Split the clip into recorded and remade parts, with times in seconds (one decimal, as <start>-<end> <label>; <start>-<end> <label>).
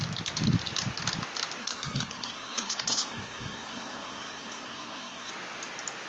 0.0-1.6 recorded; 1.6-5.3 remade; 5.3-6.1 recorded